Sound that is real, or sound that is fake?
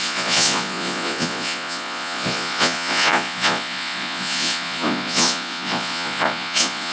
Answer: fake